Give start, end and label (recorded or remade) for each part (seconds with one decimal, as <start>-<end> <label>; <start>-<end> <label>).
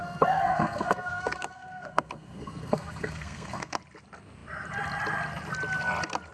0.0-3.8 remade; 3.8-6.3 recorded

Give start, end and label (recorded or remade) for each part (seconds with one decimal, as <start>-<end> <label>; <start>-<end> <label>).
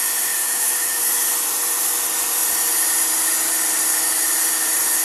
0.0-0.4 recorded; 0.4-1.0 remade; 1.0-5.0 recorded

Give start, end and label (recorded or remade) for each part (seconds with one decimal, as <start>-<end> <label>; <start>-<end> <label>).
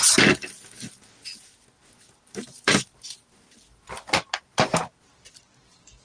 0.0-6.0 recorded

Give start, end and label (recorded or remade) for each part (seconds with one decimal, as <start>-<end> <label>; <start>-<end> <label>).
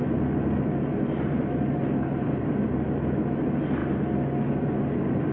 0.0-5.3 recorded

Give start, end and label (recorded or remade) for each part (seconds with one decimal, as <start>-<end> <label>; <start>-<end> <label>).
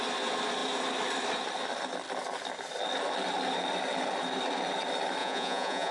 0.0-5.2 recorded; 5.2-5.9 remade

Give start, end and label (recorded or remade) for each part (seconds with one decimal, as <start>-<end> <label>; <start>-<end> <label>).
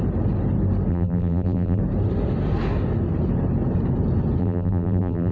0.0-0.9 recorded; 0.9-1.8 remade; 1.8-4.4 recorded; 4.4-5.3 remade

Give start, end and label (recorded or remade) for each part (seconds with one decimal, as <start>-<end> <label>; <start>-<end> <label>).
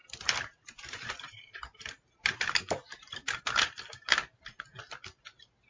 0.0-3.4 remade; 3.4-5.7 recorded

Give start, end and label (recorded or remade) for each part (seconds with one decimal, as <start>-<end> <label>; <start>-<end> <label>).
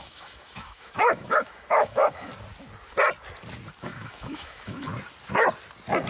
0.0-2.3 remade; 2.3-3.8 recorded; 3.8-4.9 remade; 4.9-6.1 recorded